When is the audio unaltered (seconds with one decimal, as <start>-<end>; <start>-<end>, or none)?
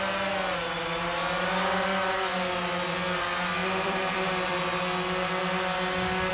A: 0.0-3.6; 4.6-6.3